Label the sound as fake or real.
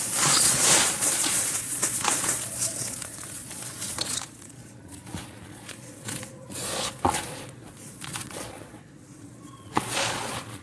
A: fake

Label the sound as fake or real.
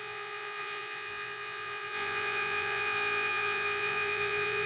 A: fake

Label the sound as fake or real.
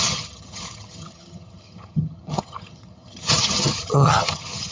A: fake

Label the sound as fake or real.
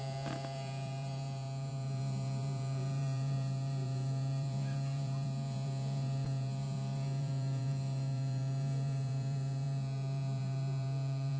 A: fake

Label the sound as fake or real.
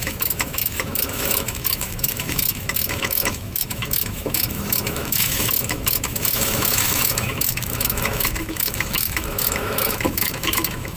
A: fake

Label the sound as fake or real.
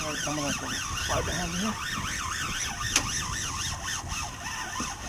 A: real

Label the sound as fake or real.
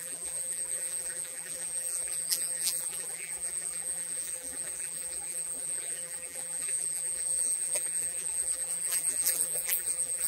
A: fake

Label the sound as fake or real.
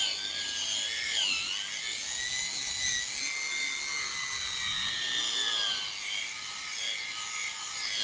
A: real